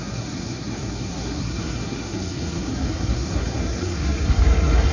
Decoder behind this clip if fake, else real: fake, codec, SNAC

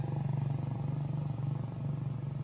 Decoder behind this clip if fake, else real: real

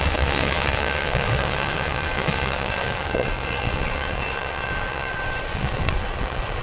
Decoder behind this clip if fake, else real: fake, vocoder, WaveNeXt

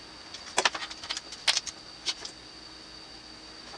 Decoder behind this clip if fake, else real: real